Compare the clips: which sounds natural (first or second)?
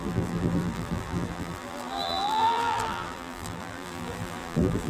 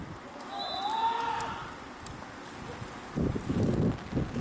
second